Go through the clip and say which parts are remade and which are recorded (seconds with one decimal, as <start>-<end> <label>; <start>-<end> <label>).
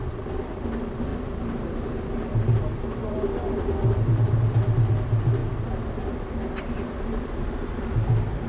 0.0-8.5 recorded